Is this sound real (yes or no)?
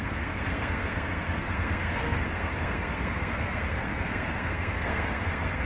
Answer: no